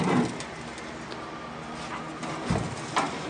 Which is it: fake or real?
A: real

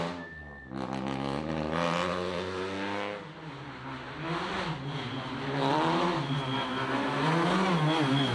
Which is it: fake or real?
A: real